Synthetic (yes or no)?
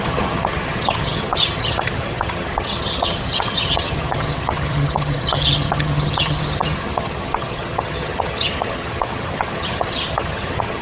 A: yes